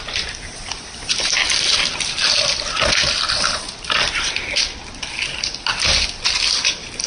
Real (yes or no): yes